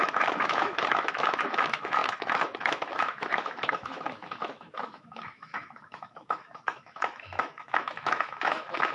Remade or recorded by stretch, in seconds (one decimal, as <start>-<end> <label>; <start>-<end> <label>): 0.0-8.9 remade